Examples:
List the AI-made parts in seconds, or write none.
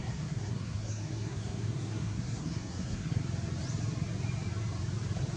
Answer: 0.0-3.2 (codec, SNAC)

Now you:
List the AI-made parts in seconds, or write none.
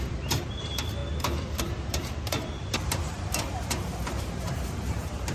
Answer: 0.0-1.0 (vocoder, BigVGAN v2); 1.6-5.3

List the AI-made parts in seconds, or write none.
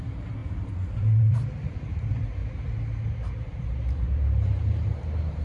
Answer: 0.0-2.4 (vocoder, BigVGAN v2); 3.1-5.4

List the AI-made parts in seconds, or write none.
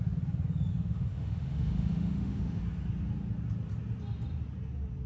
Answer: 0.7-2.6 (autoencoder, DAC-VAE)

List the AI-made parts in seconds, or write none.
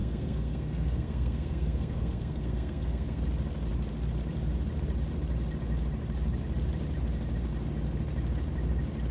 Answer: 0.0-3.2 (codec, SNAC)